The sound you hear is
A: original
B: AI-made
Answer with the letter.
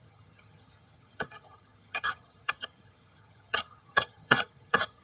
B